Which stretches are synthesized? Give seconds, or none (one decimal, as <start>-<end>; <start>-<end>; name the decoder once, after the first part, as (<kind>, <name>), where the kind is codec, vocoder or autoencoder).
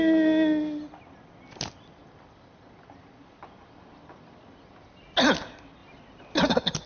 none